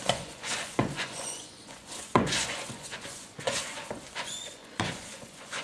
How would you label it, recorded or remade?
remade